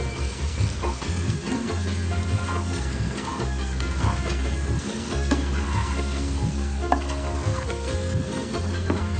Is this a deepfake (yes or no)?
yes